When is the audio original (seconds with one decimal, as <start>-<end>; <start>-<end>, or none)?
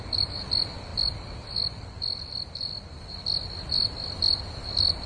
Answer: 0.0-5.1